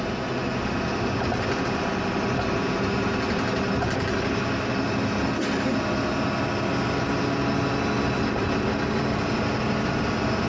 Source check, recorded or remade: recorded